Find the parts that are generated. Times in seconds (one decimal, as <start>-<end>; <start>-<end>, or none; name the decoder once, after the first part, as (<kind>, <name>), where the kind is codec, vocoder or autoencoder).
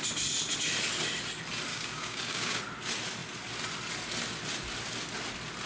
1.7-2.6 (codec, DAC)